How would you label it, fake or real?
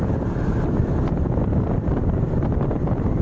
real